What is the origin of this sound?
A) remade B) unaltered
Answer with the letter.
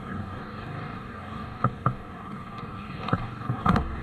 A